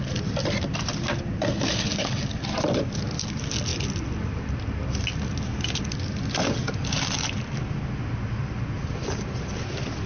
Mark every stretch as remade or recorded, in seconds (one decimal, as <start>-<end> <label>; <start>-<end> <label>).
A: 0.0-10.1 recorded